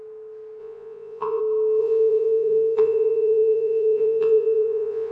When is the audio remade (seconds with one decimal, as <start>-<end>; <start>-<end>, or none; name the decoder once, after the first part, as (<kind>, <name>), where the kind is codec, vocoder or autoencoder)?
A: 0.6-1.4 (vocoder, Vocos); 1.8-5.1